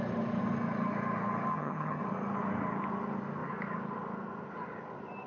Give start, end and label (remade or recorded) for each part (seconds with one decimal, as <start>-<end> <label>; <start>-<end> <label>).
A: 0.0-1.5 recorded; 1.5-2.0 remade; 2.0-5.3 recorded